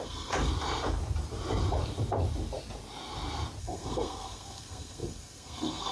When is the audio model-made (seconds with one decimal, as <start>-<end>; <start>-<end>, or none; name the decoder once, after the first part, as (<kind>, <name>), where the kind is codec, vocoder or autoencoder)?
0.0-0.5 (codec, SNAC); 3.6-5.9